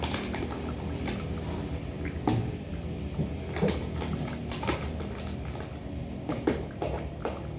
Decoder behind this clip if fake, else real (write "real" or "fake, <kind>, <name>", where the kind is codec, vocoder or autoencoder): real